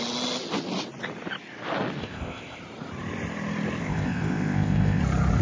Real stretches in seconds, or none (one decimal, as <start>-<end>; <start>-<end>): 0.0-2.0; 2.6-3.8; 5.0-5.4